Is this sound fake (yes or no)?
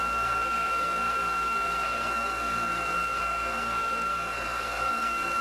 yes